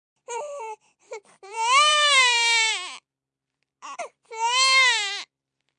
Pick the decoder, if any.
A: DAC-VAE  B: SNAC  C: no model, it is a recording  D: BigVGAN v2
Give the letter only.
D